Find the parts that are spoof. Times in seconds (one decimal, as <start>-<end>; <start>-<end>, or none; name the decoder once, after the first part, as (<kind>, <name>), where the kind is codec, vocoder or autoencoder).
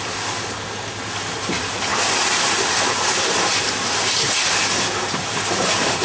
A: 0.0-1.9 (vocoder, BigVGAN v2); 2.7-6.0